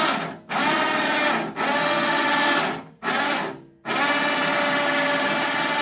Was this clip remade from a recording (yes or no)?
no